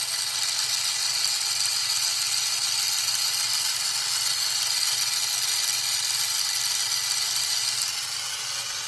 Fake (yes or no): no